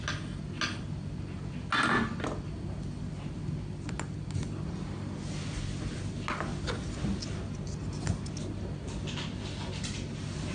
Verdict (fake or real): real